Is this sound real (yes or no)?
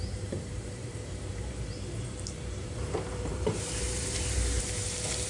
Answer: no